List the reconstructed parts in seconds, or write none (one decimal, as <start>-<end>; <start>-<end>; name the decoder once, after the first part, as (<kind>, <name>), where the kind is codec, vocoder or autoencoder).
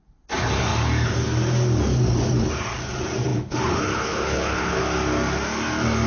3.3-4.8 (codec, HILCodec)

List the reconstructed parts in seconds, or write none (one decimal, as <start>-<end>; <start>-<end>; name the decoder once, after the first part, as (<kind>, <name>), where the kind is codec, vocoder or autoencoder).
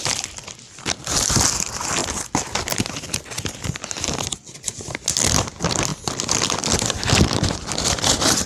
none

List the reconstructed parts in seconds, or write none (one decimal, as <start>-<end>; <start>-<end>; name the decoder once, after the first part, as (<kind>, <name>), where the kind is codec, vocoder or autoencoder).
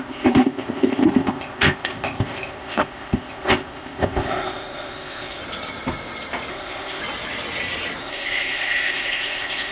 0.0-5.4 (codec, ZipCodec); 6.5-7.0; 8.0-9.7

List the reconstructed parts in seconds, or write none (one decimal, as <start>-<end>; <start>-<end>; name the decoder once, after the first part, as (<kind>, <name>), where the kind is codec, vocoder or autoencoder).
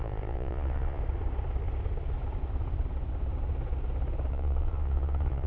0.0-1.0 (vocoder, Vocos); 4.3-5.5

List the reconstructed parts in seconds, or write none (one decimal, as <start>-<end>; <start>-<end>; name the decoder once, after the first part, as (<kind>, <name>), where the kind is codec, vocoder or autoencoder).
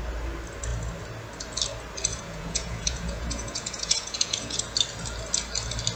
2.1-4.6 (vocoder, Vocos)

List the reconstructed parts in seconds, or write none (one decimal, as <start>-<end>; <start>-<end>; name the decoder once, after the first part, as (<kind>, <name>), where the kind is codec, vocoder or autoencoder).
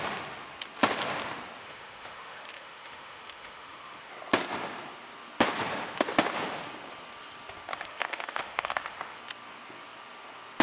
1.6-4.1 (autoencoder, DAC-VAE); 7.7-9.2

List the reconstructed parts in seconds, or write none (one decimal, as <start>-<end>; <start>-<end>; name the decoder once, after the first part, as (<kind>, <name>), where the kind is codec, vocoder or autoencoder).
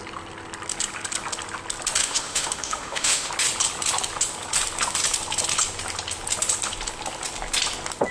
2.0-3.3 (autoencoder, DAC-VAE)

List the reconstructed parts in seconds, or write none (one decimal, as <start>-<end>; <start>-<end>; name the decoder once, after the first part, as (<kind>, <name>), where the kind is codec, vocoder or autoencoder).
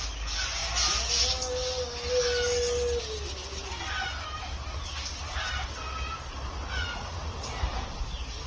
6.8-7.3 (vocoder, Vocos)